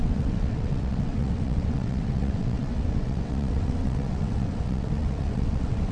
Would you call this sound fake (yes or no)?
yes